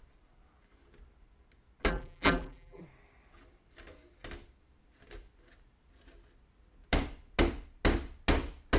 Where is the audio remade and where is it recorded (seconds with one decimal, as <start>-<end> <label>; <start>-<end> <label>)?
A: 0.0-1.9 recorded; 1.9-2.8 remade; 2.8-8.8 recorded